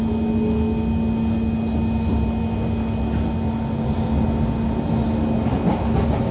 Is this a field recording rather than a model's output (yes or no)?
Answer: yes